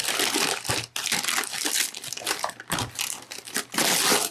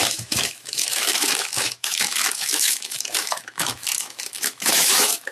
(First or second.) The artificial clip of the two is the second